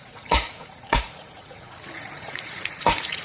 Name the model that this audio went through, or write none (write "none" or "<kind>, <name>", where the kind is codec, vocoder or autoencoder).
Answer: vocoder, Vocos